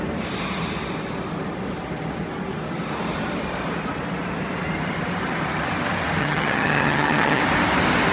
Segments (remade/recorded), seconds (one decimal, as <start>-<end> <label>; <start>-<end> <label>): 0.0-6.2 recorded; 6.2-7.4 remade; 7.4-8.1 recorded